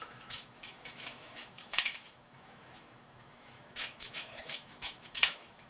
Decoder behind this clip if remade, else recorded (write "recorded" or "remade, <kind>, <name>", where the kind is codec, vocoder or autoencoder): remade, autoencoder, DAC-VAE